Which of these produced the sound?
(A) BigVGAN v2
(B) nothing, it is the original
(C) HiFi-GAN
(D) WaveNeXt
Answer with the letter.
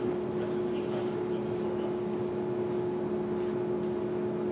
B